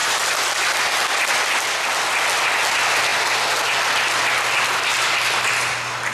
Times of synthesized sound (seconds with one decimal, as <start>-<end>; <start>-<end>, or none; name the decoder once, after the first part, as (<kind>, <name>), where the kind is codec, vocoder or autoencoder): none